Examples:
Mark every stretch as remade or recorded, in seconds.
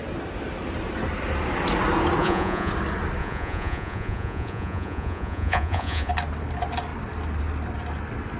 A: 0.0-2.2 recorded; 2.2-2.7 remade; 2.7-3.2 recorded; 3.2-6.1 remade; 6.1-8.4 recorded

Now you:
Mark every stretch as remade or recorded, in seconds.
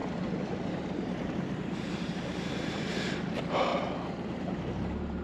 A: 0.0-0.7 recorded; 0.7-3.7 remade; 3.7-4.3 recorded; 4.3-5.2 remade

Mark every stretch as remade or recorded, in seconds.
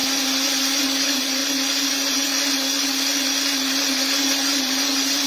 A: 0.0-0.8 recorded; 0.8-1.4 remade; 1.4-1.9 recorded; 1.9-2.3 remade; 2.3-4.6 recorded; 4.6-5.3 remade